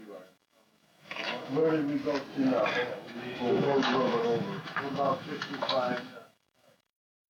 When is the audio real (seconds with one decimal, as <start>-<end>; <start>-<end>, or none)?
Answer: 1.6-2.9